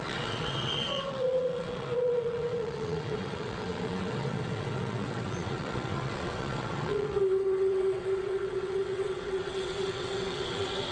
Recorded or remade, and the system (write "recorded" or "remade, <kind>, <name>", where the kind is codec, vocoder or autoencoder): remade, vocoder, WaveNeXt